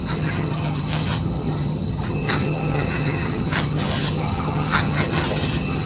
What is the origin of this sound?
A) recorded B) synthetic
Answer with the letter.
B